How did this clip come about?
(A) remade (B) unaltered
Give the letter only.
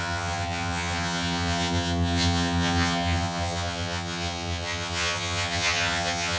A